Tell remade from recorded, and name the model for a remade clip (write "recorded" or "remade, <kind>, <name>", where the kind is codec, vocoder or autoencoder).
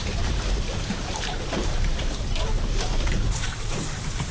remade, vocoder, BigVGAN v2